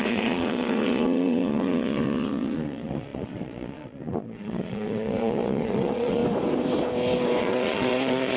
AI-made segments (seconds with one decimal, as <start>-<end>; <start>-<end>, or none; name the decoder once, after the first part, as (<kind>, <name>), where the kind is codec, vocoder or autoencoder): 0.0-6.2 (vocoder, Vocos); 7.4-8.4